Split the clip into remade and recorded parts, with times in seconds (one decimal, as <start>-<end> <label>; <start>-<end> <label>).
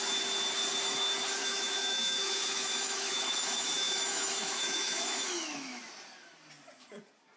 0.0-1.4 recorded; 1.4-5.8 remade; 5.8-7.4 recorded